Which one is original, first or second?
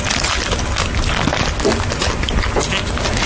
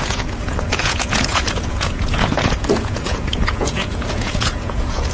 first